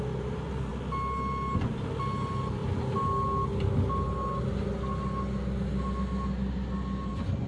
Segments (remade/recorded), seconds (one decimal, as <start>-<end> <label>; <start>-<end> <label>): 0.0-7.5 recorded